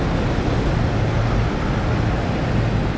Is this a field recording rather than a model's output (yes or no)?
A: yes